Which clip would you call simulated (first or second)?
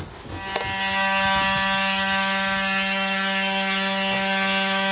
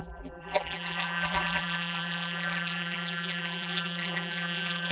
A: second